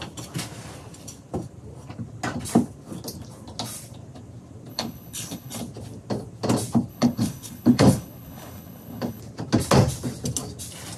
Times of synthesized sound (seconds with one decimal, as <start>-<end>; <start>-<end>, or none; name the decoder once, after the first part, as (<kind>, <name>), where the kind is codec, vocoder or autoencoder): 4.7-5.6 (codec, HILCodec); 6.9-9.2